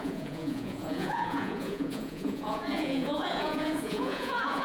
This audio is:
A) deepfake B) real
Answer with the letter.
A